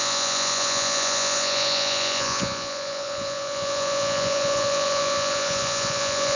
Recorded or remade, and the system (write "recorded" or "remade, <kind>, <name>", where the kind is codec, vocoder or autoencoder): remade, vocoder, Vocos